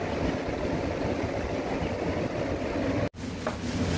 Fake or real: real